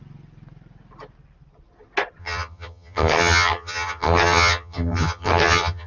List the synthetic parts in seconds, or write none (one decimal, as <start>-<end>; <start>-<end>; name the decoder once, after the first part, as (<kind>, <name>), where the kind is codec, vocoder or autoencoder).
2.2-5.9 (vocoder, HiFi-GAN)